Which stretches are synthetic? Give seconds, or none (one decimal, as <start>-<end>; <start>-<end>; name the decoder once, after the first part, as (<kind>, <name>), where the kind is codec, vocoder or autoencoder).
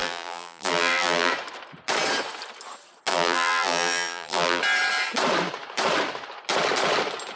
0.0-1.3 (vocoder, BigVGAN v2); 3.1-4.6